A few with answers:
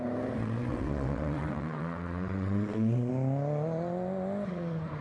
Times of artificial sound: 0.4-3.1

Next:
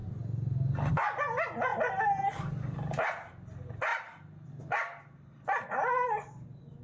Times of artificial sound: none

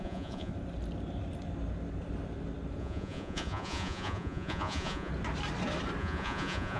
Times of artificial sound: 0.0-0.5; 2.8-5.1; 6.0-6.8

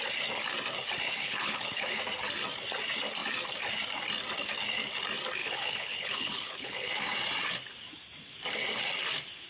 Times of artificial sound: 1.2-2.0; 5.4-6.9

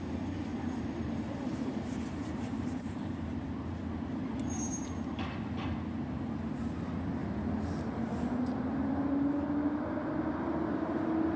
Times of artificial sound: 0.5-3.5

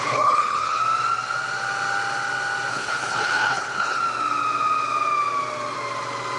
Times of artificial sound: 0.0-0.8; 2.7-4.0

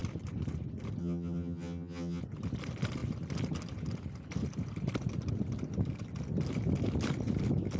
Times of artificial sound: 1.0-2.2

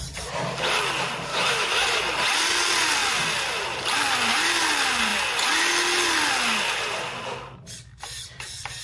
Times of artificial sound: 1.3-2.0